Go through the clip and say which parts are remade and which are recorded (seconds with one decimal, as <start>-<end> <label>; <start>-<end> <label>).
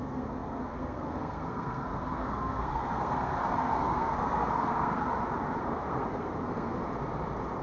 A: 0.0-5.1 remade; 5.1-5.6 recorded; 5.6-6.8 remade; 6.8-7.6 recorded